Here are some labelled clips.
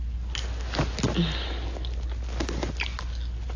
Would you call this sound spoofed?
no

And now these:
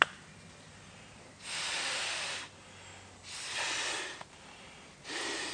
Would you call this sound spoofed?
no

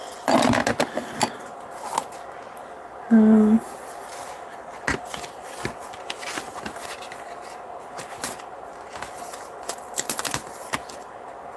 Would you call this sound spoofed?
no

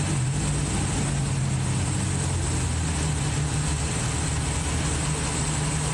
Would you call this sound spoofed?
no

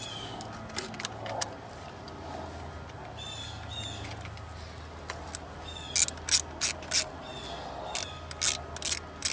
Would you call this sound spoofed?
no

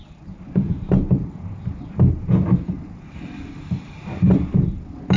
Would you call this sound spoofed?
no